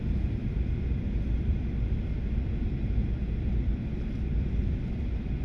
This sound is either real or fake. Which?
real